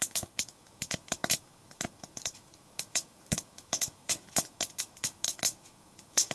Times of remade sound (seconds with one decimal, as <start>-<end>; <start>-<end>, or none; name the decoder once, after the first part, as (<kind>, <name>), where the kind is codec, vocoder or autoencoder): 0.0-6.3 (autoencoder, DAC-VAE)